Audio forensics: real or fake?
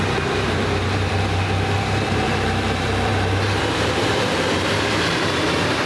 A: fake